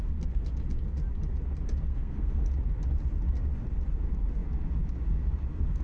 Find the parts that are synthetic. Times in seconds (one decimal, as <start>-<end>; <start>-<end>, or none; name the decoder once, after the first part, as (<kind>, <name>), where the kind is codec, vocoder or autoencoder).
1.9-2.5 (codec, SNAC)